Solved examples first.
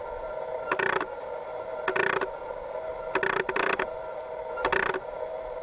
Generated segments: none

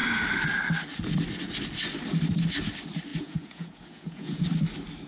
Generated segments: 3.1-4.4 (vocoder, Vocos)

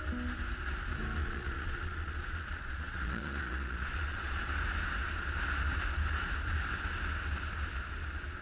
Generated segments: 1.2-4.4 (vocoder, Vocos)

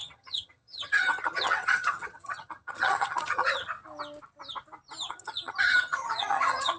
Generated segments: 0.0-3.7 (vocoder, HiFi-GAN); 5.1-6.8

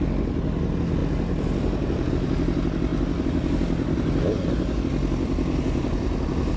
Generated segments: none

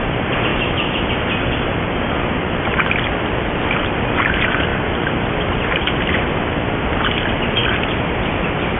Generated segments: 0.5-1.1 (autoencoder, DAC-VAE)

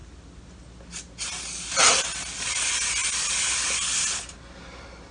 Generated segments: 3.0-3.6 (vocoder, BigVGAN v2)